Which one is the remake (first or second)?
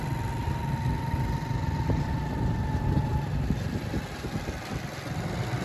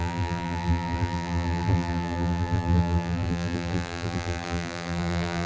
second